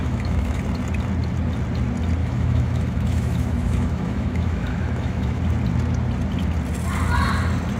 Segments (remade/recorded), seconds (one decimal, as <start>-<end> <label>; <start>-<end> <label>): 0.0-0.6 remade; 0.6-2.2 recorded; 2.2-5.4 remade; 5.4-7.8 recorded